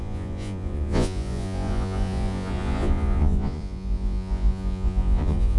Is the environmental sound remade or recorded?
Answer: remade